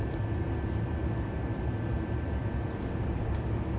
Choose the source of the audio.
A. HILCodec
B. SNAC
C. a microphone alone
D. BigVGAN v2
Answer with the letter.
C